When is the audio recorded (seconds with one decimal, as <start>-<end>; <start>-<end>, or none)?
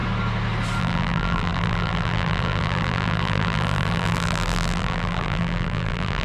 0.0-0.8